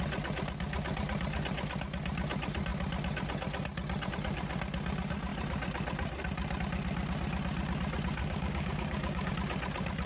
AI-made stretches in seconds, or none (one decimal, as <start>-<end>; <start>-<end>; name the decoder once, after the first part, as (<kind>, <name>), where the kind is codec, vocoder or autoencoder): 8.2-9.3 (codec, DAC)

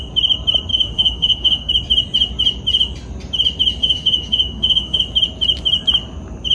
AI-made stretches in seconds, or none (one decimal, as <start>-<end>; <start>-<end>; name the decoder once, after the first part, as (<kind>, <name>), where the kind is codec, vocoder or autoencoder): 0.7-1.7 (autoencoder, DAC-VAE); 3.8-5.0

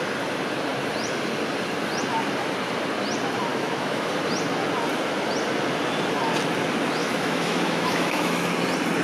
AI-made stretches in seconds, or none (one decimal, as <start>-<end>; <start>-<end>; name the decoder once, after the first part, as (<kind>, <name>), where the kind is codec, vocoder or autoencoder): 3.5-4.1 (autoencoder, DAC-VAE); 7.0-8.5

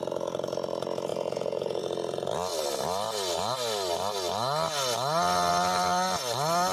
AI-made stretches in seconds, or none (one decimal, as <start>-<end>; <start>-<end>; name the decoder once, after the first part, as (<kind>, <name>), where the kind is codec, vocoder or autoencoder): 1.1-1.8 (vocoder, Vocos)

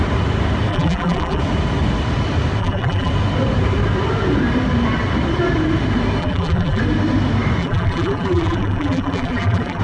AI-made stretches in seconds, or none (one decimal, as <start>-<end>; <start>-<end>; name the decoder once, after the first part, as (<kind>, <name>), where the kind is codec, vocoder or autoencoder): 0.7-1.4 (vocoder, BigVGAN v2); 2.6-3.1; 6.2-6.8; 7.6-9.8

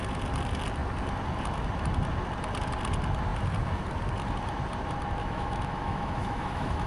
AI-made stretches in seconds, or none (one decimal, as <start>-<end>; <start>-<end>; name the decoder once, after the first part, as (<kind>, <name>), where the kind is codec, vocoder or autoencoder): 5.2-6.9 (autoencoder, DAC-VAE)